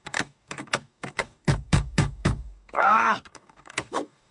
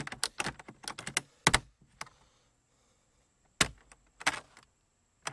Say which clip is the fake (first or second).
first